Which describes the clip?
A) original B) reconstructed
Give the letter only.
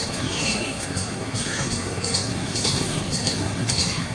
B